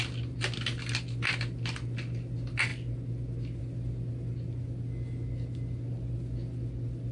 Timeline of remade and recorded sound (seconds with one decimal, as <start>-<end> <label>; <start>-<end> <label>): 0.0-7.1 recorded